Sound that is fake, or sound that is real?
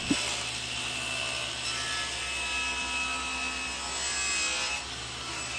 real